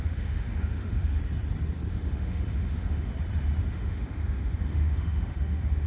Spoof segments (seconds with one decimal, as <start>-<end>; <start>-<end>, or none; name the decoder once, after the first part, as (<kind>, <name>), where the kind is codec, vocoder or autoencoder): 0.0-1.2 (autoencoder, DAC-VAE); 1.9-3.1; 3.7-5.9